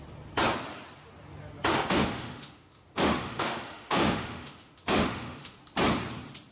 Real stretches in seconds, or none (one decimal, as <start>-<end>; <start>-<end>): 0.0-1.7; 5.6-6.5